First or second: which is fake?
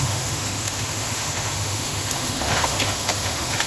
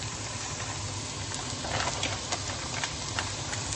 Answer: first